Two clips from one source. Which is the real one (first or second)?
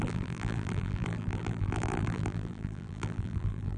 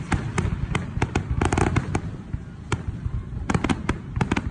second